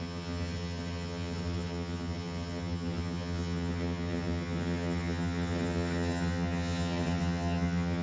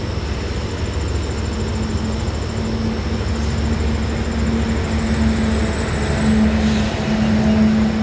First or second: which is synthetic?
first